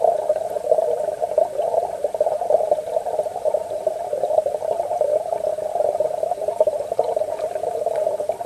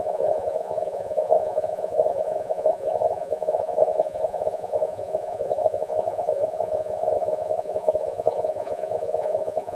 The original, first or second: first